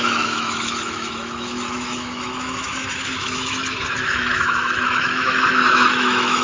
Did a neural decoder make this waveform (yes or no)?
yes